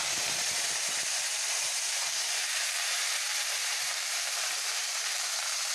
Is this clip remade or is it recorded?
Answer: remade